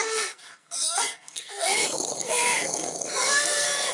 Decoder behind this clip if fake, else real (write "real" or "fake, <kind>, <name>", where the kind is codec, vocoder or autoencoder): fake, codec, SNAC